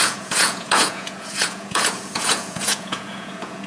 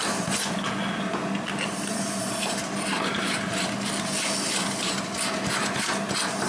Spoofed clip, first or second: first